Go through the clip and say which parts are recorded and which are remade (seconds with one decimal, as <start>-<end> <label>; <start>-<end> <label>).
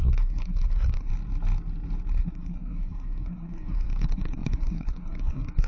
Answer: 0.0-1.1 remade; 1.1-2.1 recorded; 2.1-5.7 remade